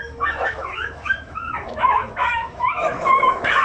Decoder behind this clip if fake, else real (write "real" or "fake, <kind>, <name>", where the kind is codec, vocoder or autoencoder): fake, autoencoder, DAC-VAE